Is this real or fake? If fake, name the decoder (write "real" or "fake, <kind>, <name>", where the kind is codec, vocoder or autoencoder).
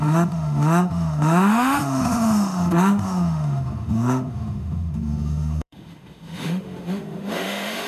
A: fake, autoencoder, DAC-VAE